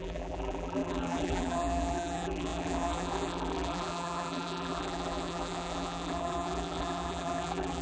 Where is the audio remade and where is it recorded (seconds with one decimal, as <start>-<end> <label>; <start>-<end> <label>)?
0.0-7.8 remade